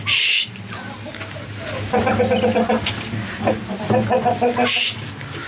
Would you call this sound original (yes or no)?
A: yes